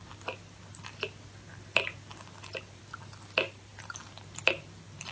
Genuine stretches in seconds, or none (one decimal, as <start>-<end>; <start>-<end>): 0.0-5.1